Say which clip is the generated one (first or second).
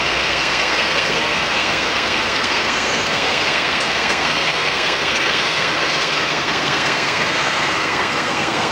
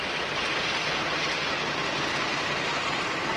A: first